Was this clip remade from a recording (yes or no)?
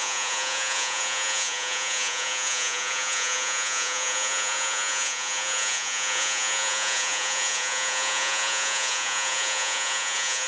yes